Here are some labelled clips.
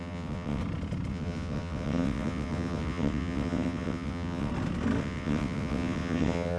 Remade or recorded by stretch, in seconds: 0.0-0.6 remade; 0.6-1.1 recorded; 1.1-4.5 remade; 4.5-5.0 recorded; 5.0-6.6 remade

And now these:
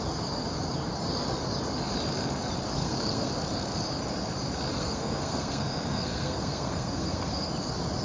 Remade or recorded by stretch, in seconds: 0.0-2.8 recorded; 2.8-3.3 remade; 3.3-4.7 recorded; 4.7-7.5 remade; 7.5-8.0 recorded

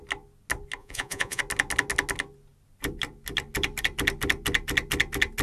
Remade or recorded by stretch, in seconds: 0.0-0.8 recorded; 0.8-1.4 remade; 1.4-5.4 recorded